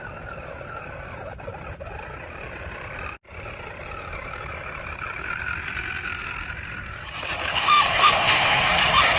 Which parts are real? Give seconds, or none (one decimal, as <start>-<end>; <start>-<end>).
0.0-7.5; 8.7-9.2